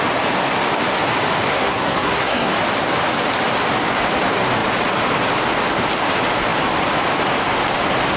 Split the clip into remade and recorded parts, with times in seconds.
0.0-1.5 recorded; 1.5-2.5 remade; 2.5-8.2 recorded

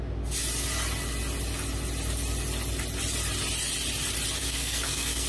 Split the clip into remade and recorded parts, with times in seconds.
0.0-4.4 recorded; 4.4-5.3 remade

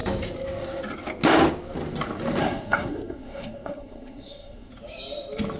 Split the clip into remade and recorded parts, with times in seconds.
0.0-2.4 recorded; 2.4-4.7 remade; 4.7-5.6 recorded

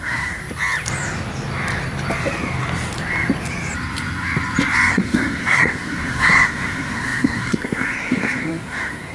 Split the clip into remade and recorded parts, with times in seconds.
0.0-0.4 remade; 0.4-4.9 recorded; 4.9-9.1 remade

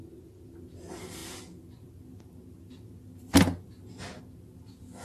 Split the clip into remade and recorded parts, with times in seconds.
0.0-5.0 recorded

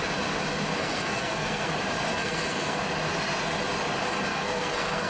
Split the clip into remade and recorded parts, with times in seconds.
0.0-0.8 recorded; 0.8-1.7 remade; 1.7-2.1 recorded; 2.1-2.8 remade; 2.8-4.3 recorded; 4.3-5.1 remade

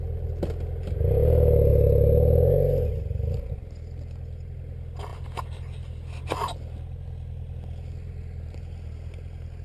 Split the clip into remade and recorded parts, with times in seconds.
0.0-9.6 recorded

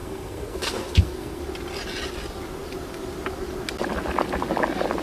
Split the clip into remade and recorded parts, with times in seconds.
0.0-1.4 remade; 1.4-5.0 recorded